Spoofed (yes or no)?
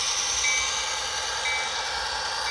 no